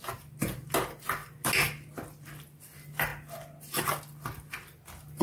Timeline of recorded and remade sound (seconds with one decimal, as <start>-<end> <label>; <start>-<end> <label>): 0.0-5.2 recorded